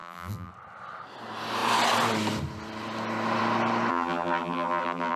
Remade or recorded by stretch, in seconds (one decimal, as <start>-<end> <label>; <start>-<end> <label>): 0.0-0.5 remade; 0.5-3.9 recorded; 3.9-5.2 remade